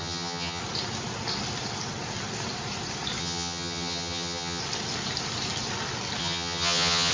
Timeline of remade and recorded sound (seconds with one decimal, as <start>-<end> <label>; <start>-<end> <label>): 0.0-0.6 remade; 0.6-3.2 recorded; 3.2-4.6 remade; 4.6-6.2 recorded; 6.2-7.1 remade